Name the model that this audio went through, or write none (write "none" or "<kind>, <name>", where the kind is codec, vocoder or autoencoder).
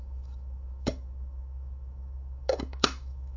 autoencoder, DAC-VAE